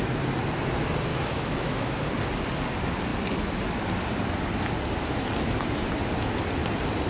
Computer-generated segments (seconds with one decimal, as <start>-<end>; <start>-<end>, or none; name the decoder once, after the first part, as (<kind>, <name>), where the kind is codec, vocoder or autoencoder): 1.1-2.0 (autoencoder, DAC-VAE)